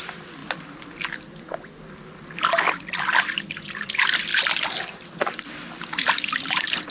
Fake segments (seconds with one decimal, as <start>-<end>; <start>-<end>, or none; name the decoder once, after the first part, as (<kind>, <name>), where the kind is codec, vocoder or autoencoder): 0.0-0.4 (vocoder, BigVGAN v2); 2.5-4.3; 5.3-6.9